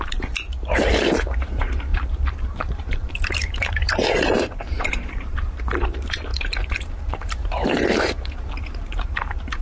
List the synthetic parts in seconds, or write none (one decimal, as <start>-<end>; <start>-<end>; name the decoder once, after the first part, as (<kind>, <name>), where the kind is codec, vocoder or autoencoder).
0.0-9.6 (vocoder, BigVGAN v2)